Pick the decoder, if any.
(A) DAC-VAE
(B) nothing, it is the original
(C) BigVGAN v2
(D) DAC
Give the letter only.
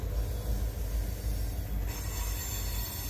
B